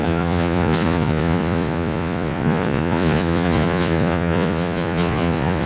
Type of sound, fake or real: fake